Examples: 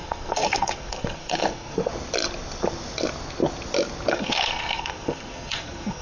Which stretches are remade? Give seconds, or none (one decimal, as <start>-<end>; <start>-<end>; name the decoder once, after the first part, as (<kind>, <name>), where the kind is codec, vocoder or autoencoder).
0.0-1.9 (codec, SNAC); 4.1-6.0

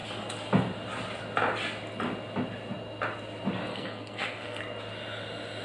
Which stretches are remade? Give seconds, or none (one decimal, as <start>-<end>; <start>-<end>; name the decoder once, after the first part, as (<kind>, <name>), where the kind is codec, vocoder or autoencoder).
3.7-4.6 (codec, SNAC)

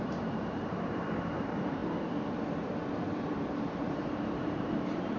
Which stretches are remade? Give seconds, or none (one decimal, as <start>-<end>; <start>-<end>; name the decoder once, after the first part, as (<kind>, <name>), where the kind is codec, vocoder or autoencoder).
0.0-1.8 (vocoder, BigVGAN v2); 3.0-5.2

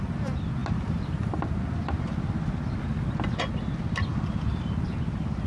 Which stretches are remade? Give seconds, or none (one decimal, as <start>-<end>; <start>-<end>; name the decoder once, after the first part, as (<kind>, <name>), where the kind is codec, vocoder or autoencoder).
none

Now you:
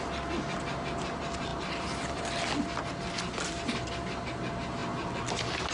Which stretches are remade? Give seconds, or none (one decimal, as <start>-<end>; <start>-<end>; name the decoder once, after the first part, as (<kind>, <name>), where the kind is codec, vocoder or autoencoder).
none

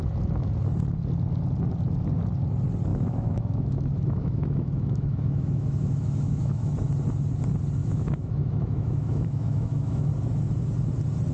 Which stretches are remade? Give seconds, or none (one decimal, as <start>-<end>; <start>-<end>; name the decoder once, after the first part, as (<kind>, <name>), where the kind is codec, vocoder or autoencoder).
2.9-6.7 (autoencoder, DAC-VAE); 7.8-10.1

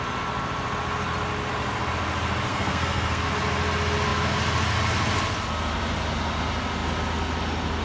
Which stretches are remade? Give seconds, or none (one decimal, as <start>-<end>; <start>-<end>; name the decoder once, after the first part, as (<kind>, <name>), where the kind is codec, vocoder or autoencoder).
2.5-3.3 (codec, SNAC)

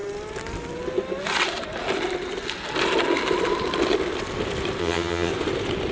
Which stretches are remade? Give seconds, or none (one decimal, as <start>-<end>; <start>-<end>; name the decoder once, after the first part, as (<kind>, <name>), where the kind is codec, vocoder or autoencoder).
4.8-5.3 (vocoder, HiFi-GAN)